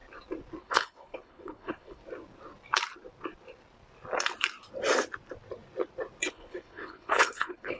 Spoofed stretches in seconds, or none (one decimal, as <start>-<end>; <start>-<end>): 0.6-2.0; 6.3-7.8